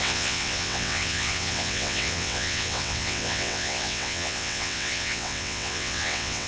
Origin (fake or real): fake